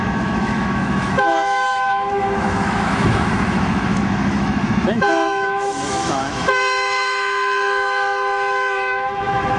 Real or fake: fake